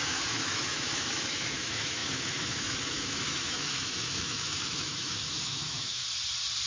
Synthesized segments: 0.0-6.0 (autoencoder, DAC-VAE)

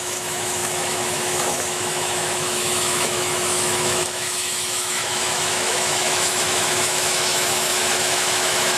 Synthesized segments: 0.0-8.8 (autoencoder, DAC-VAE)

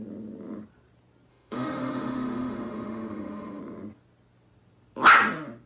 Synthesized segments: 1.3-3.6 (autoencoder, DAC-VAE)